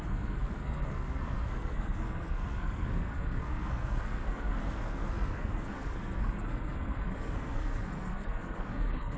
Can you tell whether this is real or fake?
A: fake